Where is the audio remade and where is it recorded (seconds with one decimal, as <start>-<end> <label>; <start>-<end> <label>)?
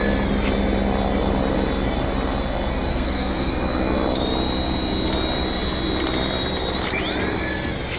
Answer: 0.0-2.9 recorded; 2.9-3.5 remade; 3.5-8.0 recorded